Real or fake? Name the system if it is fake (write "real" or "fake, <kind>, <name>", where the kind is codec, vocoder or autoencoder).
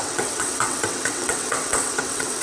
fake, vocoder, WaveNeXt